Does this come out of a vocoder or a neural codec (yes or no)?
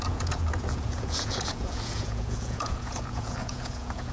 yes